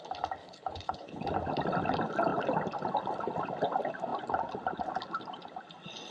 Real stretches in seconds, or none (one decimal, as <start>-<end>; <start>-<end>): 0.0-0.4; 1.2-6.1